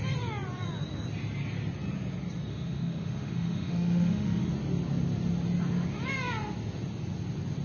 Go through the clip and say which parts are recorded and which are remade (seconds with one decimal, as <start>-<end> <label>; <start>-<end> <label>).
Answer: 0.0-2.5 recorded; 2.5-4.5 remade; 4.5-7.6 recorded